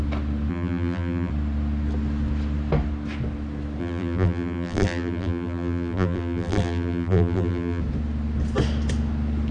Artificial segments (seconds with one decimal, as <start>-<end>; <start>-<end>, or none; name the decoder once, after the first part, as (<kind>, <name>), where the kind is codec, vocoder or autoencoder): 0.5-1.3 (vocoder, BigVGAN v2); 3.8-7.8